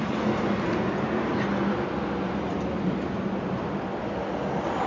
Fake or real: real